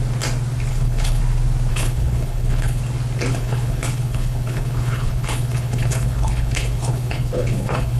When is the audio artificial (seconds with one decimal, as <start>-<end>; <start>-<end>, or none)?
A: 0.7-1.2; 1.7-2.8; 3.3-8.0